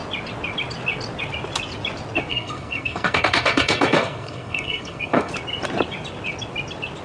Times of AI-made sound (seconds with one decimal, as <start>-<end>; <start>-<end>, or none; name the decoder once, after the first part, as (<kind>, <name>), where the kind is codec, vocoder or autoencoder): 2.3-5.3 (codec, SNAC)